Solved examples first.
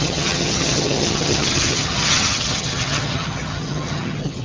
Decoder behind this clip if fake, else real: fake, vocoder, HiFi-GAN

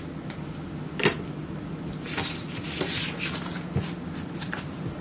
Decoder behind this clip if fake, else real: real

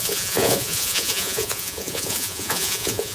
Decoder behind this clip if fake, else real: fake, vocoder, Vocos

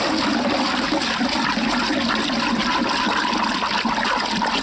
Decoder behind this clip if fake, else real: real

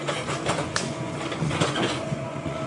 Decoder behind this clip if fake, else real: fake, vocoder, Vocos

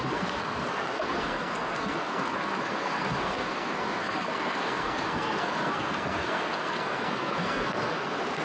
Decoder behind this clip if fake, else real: fake, codec, SNAC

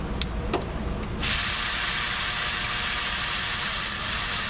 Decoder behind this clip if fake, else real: real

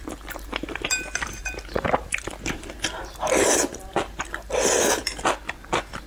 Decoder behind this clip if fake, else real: fake, vocoder, BigVGAN v2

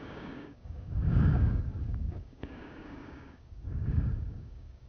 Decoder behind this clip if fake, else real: fake, codec, DAC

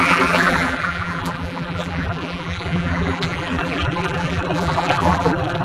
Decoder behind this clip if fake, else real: fake, vocoder, BigVGAN v2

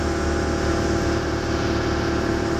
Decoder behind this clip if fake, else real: real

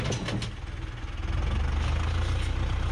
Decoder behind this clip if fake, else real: real